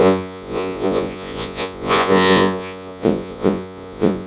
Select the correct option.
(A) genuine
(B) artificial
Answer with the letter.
B